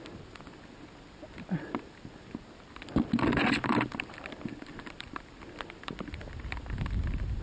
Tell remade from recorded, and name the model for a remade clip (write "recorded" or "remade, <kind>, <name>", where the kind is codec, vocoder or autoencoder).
recorded